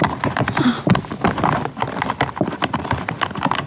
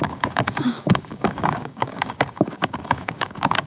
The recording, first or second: first